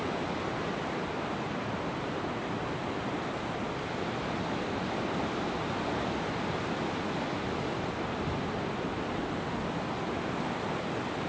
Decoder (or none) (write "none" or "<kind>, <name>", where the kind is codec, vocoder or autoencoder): none